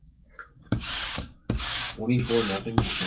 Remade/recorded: remade